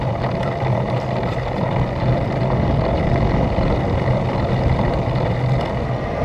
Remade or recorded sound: remade